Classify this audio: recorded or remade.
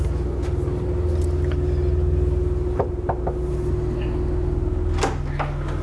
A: recorded